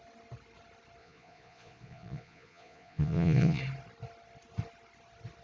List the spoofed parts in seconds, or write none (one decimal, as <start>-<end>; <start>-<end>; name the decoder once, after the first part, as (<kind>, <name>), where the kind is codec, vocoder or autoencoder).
1.0-3.6 (vocoder, Vocos)